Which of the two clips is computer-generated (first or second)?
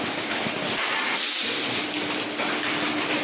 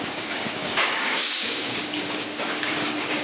second